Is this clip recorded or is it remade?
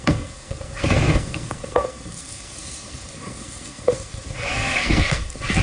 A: remade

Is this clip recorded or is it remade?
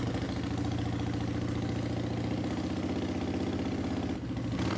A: recorded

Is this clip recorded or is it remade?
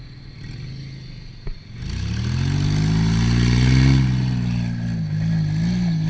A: recorded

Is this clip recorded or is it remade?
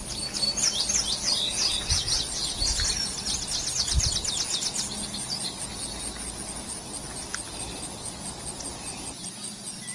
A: recorded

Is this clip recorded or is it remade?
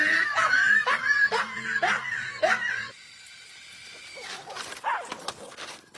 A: recorded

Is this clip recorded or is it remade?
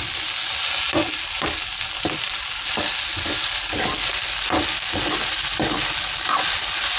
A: recorded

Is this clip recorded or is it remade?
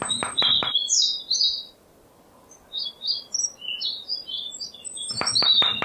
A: recorded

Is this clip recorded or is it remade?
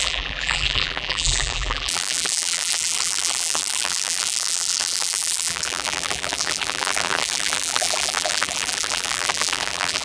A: remade